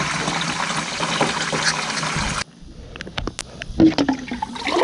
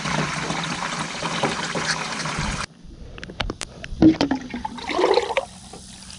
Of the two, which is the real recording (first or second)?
first